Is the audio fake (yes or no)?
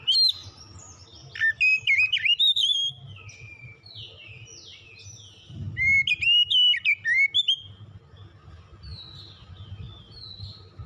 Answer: no